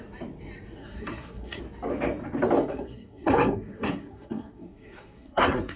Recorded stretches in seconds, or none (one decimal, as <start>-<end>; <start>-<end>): 0.0-0.8; 1.6-2.7